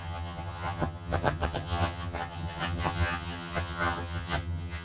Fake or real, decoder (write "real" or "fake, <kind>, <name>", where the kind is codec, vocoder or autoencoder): fake, vocoder, HiFi-GAN